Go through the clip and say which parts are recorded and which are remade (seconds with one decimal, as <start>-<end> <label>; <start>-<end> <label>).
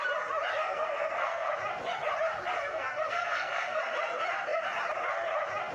0.0-0.6 recorded; 0.6-1.5 remade; 1.5-2.5 recorded; 2.5-3.8 remade; 3.8-5.7 recorded